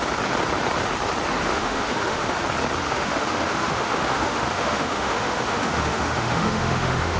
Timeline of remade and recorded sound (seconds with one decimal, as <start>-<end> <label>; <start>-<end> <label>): 0.0-1.5 recorded; 1.5-2.4 remade; 2.4-2.8 recorded; 2.8-7.2 remade